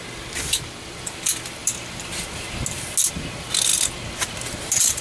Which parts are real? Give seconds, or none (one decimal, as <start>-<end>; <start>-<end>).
0.0-5.0